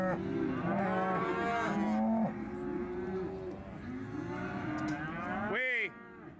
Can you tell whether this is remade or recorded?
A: recorded